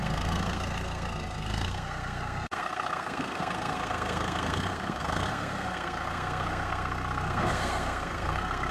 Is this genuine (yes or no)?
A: no